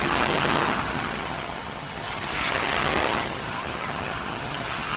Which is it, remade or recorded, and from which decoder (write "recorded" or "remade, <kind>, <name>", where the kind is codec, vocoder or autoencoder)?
remade, vocoder, HiFi-GAN